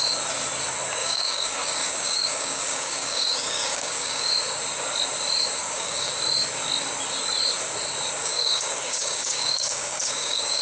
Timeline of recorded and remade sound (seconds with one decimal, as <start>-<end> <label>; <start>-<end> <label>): 0.0-1.0 recorded; 1.0-4.3 remade; 4.3-5.6 recorded; 5.6-6.1 remade; 6.1-8.2 recorded; 8.2-10.6 remade